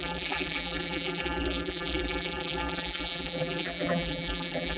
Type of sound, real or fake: fake